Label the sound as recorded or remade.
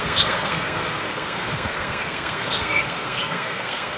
remade